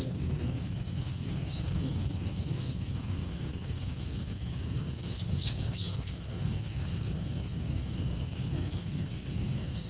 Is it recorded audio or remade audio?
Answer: remade